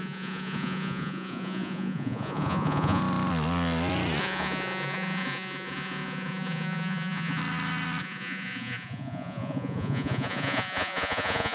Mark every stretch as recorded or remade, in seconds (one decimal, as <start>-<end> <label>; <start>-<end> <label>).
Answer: 0.0-3.0 remade; 3.0-4.2 recorded; 4.2-7.4 remade; 7.4-8.0 recorded; 8.0-11.5 remade